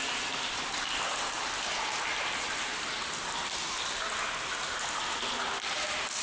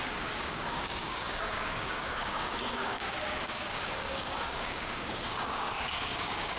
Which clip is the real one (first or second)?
first